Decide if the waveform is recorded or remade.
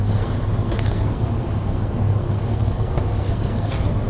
remade